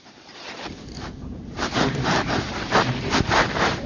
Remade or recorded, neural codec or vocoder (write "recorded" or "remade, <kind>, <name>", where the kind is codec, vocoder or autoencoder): remade, vocoder, BigVGAN v2